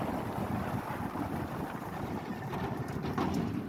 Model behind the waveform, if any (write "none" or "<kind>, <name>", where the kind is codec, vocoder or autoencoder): none